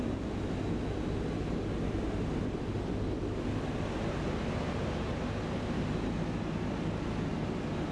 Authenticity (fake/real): real